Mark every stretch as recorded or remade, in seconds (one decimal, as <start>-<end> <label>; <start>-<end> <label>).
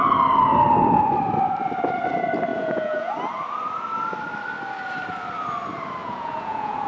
0.0-2.5 recorded; 2.5-3.1 remade; 3.1-6.0 recorded; 6.0-6.9 remade